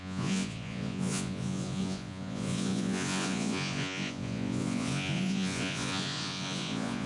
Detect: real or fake fake